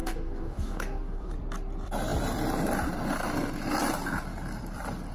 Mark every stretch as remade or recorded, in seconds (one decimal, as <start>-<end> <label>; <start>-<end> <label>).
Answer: 0.0-1.3 remade; 1.3-5.1 recorded